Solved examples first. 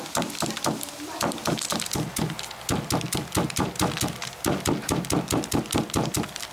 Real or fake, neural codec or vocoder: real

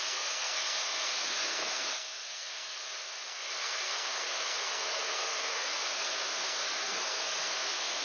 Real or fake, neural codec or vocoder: fake, codec, SNAC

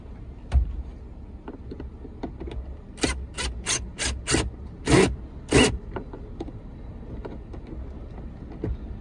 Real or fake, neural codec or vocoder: real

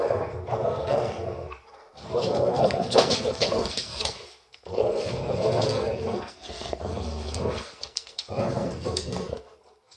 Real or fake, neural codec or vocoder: fake, codec, SNAC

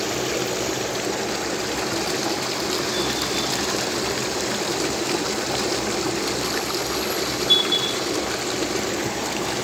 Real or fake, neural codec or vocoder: real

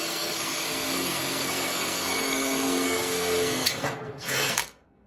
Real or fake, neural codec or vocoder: fake, codec, SNAC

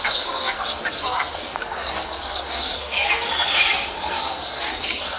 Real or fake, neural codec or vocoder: fake, codec, SNAC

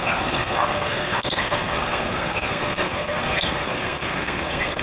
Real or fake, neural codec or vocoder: fake, codec, SNAC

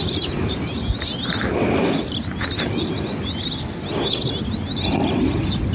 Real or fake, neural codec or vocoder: real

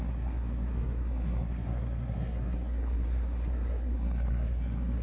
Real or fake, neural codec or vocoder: fake, codec, SNAC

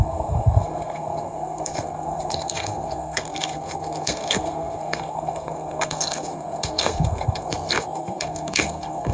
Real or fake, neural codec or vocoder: fake, codec, SNAC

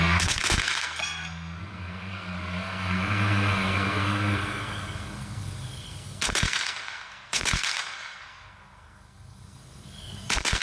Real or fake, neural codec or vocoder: fake, codec, SNAC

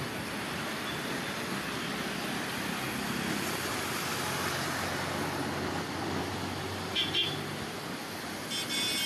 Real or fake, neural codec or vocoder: real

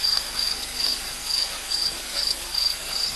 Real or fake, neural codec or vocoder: fake, codec, SNAC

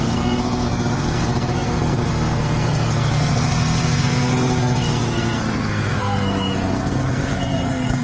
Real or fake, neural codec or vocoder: fake, codec, SNAC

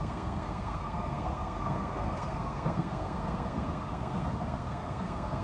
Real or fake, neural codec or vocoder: fake, codec, SNAC